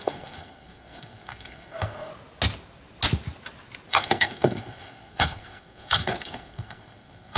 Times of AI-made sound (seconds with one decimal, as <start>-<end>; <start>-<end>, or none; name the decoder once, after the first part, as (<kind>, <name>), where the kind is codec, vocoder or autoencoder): 0.0-2.1 (codec, SNAC); 3.9-7.4